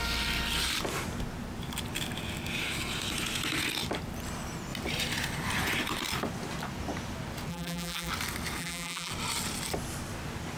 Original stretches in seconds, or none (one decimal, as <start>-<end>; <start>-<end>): 0.0-7.5; 8.1-8.6; 9.1-10.6